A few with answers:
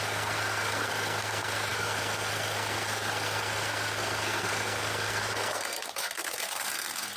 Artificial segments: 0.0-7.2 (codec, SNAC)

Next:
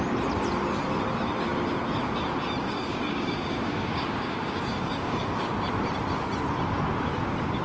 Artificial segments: 2.6-5.5 (codec, DAC)

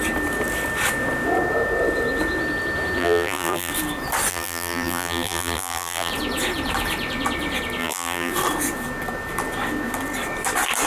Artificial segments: 3.0-3.7 (vocoder, BigVGAN v2); 4.3-6.1; 7.8-8.3

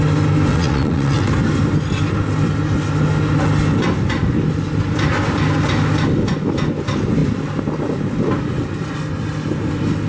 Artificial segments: 0.5-1.3 (vocoder, WaveNeXt)

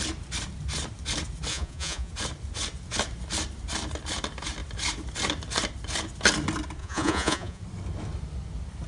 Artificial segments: 1.5-2.1 (vocoder, Vocos); 6.8-7.6

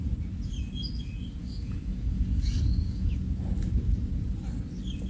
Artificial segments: 1.4-3.1 (codec, DAC)

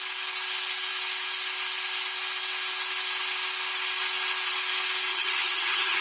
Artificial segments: 5.1-6.0 (vocoder, HiFi-GAN)

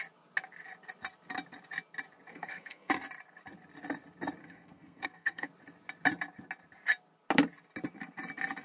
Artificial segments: 2.3-2.9 (codec, SNAC); 4.4-5.5